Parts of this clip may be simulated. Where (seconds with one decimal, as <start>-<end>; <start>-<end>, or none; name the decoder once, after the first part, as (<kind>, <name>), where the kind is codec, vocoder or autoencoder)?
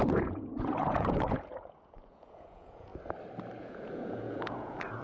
0.0-2.9 (vocoder, Vocos); 3.6-5.0